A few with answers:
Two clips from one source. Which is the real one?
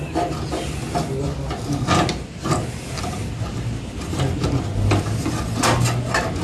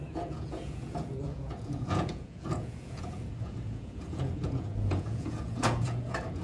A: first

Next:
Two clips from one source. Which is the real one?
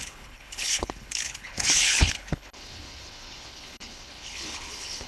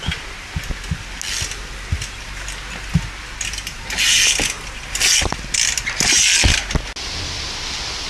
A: second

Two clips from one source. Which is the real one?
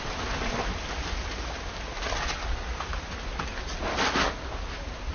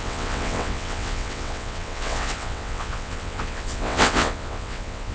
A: first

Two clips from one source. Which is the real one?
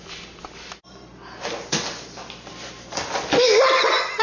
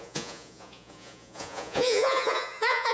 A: first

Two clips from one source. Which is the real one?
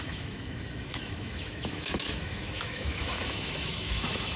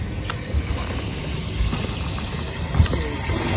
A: second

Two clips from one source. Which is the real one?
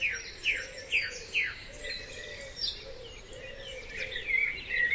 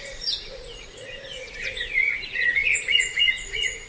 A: first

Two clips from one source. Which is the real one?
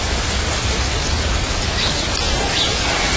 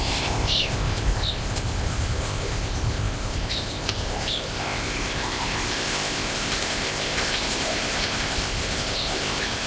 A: first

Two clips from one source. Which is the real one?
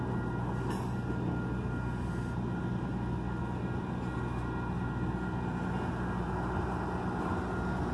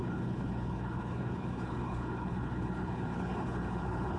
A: first